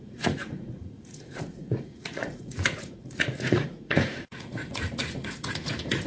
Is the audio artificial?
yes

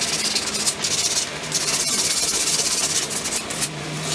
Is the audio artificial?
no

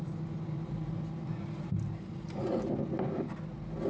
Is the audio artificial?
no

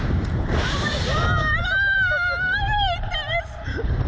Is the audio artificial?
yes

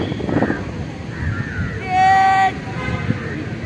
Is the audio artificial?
no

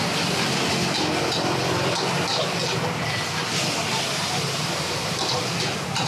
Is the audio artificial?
no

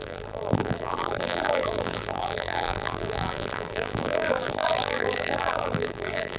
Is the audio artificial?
yes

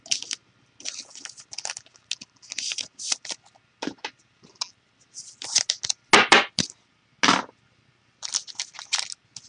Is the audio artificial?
no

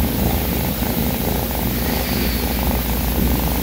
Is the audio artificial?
no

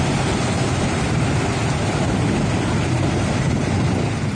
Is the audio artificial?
no